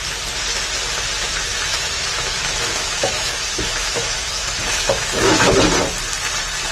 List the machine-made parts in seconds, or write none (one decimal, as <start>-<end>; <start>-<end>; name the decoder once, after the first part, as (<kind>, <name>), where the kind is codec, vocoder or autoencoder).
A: 1.5-5.5 (autoencoder, DAC-VAE)